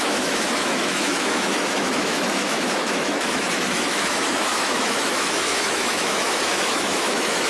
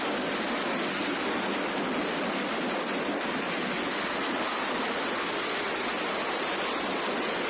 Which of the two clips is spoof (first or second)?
first